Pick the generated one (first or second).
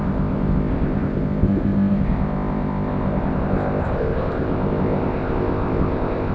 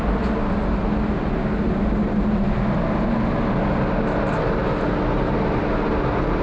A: first